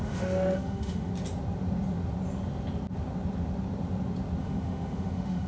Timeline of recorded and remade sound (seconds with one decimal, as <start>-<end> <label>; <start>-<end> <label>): 0.0-1.1 remade; 1.1-4.4 recorded; 4.4-5.5 remade